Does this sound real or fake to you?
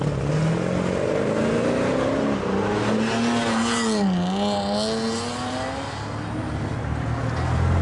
real